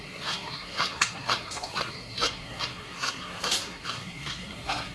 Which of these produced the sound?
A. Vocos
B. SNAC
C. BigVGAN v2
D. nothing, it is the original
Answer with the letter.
B